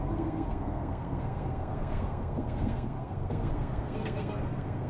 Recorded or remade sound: remade